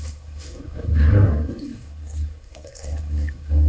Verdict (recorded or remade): remade